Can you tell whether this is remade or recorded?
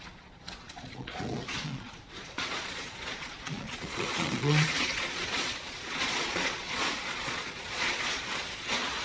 remade